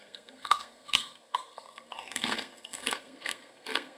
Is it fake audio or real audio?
fake